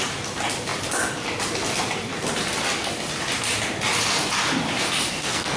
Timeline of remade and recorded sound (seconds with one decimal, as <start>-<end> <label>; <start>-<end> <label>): 0.0-5.1 recorded; 5.1-5.6 remade